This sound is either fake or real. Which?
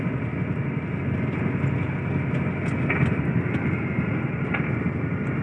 real